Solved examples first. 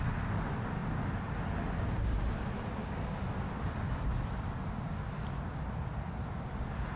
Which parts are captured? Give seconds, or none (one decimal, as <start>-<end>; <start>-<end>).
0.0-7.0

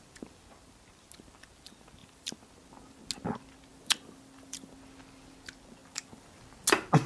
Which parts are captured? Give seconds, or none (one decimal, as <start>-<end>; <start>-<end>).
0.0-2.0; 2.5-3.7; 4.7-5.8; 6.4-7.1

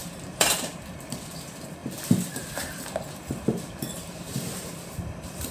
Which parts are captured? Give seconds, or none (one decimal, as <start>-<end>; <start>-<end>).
0.8-5.5